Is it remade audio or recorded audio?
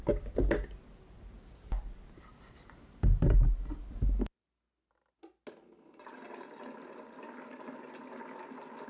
recorded